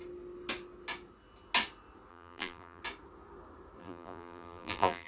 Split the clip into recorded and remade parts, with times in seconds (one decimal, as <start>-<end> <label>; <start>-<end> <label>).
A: 0.0-2.1 recorded; 2.1-2.8 remade; 2.8-3.8 recorded; 3.8-5.1 remade